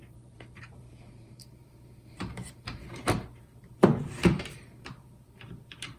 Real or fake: fake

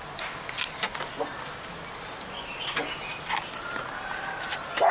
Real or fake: real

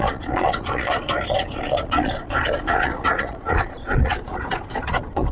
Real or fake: fake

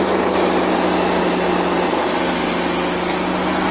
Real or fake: real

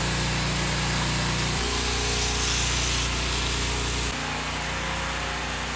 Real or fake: real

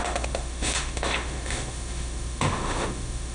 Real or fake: fake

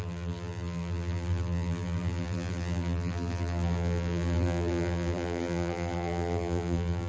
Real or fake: fake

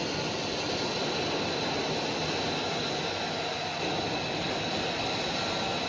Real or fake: real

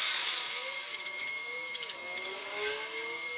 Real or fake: fake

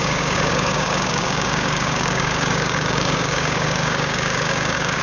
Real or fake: fake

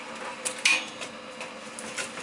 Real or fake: real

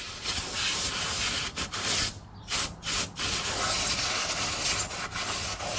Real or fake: real